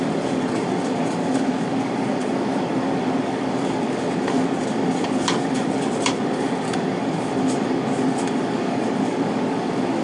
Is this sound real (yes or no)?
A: no